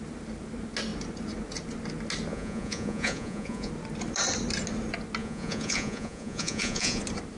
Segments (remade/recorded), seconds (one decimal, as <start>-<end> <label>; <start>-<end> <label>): 0.0-2.3 recorded; 2.3-3.7 remade; 3.7-5.2 recorded; 5.2-7.0 remade; 7.0-7.4 recorded